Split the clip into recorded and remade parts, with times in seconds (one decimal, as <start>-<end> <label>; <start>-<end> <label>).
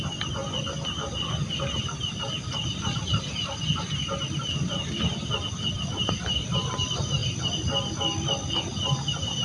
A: 0.0-9.4 recorded